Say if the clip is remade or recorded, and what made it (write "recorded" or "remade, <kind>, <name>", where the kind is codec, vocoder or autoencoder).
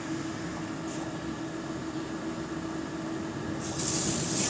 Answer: recorded